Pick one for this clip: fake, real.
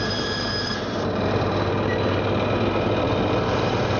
fake